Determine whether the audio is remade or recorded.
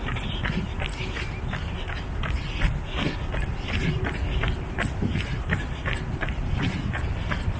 recorded